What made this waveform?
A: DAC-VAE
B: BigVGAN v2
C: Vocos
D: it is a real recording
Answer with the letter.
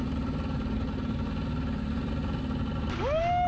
D